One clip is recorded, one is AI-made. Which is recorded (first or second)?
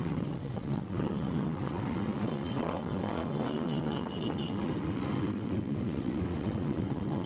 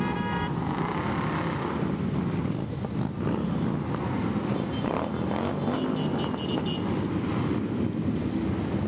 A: second